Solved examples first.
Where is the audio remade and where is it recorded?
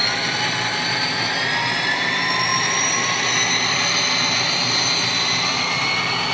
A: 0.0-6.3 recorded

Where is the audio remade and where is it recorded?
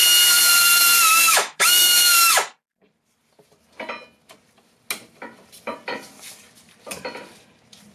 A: 0.0-1.3 recorded; 1.3-2.3 remade; 2.3-7.9 recorded